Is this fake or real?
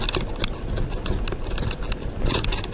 real